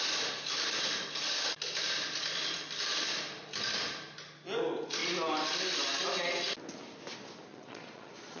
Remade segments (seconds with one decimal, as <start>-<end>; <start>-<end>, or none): 7.5-8.4